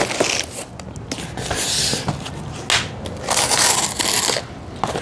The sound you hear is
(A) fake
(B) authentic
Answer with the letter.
B